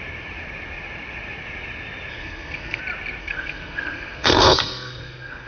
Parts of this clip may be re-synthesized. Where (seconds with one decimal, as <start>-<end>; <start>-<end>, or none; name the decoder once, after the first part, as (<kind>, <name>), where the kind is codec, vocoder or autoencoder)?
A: 2.1-2.8 (codec, SNAC); 3.2-5.5